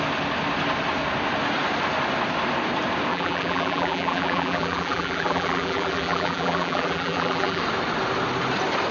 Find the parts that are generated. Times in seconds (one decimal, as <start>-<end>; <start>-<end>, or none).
3.1-7.6